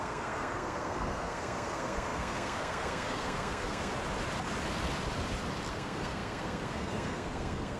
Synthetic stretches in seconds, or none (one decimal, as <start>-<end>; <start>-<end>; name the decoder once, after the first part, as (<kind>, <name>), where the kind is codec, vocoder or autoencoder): 0.0-3.9 (codec, SNAC); 5.7-7.8